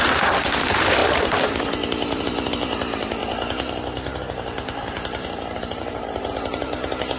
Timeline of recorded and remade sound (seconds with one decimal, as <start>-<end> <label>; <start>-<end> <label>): 0.0-7.2 remade